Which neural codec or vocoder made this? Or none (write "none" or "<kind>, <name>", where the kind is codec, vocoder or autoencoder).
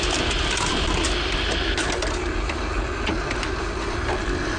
none